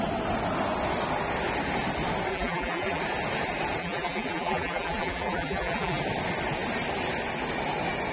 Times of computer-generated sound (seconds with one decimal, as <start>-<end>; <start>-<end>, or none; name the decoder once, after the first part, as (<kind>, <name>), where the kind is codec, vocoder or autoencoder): 2.3-3.0 (vocoder, BigVGAN v2); 3.8-6.0